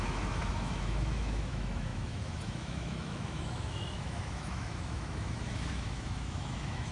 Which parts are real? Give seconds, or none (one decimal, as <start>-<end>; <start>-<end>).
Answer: none